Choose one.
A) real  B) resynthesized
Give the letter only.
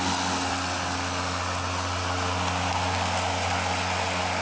A